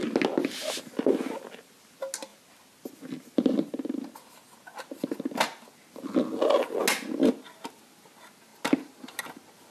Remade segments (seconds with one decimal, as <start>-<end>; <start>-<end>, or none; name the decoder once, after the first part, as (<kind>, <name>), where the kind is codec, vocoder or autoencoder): none